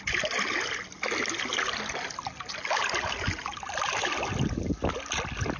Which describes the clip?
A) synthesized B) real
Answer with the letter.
B